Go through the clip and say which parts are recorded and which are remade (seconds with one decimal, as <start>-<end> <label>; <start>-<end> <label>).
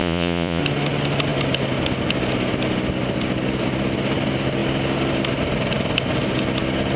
0.0-0.6 remade; 0.6-7.0 recorded